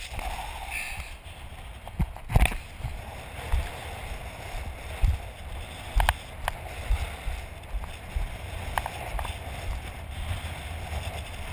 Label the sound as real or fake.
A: real